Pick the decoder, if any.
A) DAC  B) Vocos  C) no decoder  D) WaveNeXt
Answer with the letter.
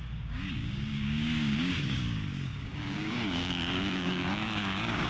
A